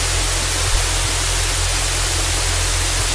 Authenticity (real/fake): real